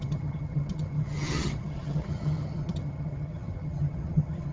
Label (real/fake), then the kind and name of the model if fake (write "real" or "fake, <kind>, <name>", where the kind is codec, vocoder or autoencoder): fake, vocoder, HiFi-GAN